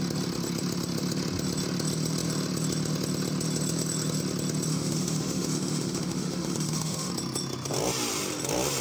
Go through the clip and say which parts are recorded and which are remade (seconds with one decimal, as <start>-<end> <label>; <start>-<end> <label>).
0.0-4.7 recorded; 4.7-7.1 remade; 7.1-8.8 recorded